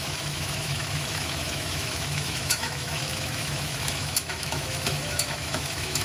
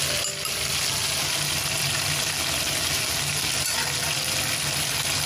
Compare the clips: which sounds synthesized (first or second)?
first